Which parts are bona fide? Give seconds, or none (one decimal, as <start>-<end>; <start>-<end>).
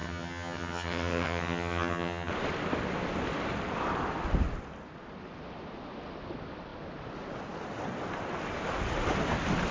2.3-9.7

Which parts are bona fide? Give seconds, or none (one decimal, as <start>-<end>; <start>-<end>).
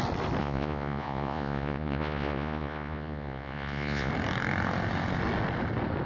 0.0-0.4; 4.1-6.1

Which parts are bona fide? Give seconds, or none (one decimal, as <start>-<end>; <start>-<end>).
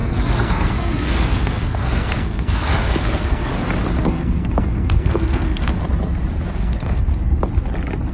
3.5-4.0; 5.8-6.5; 7.1-8.1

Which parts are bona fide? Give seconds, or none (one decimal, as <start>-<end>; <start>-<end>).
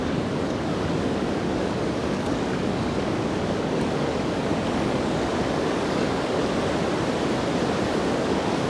6.4-8.1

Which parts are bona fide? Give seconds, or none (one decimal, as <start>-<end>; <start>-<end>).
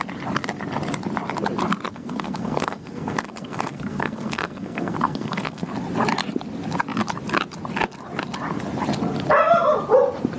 0.0-1.9; 5.7-10.4